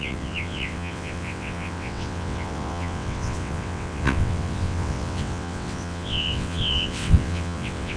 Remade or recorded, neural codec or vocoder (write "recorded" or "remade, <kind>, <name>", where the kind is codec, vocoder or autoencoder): remade, vocoder, WaveNeXt